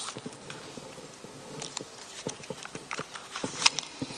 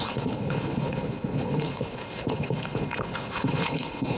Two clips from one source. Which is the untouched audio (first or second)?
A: first